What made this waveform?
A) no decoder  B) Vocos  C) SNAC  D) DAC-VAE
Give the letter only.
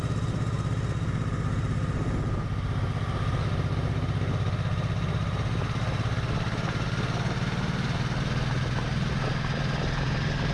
A